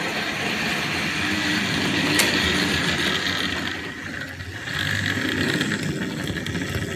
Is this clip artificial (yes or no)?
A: no